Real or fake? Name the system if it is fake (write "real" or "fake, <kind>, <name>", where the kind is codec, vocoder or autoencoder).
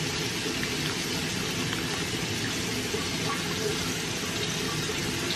real